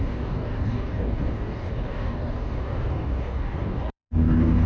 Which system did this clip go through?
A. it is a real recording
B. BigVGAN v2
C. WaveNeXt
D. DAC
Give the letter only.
D